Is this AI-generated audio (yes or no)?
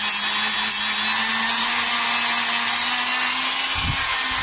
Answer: no